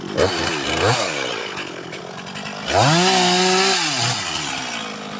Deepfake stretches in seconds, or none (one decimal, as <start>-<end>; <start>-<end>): 1.4-2.0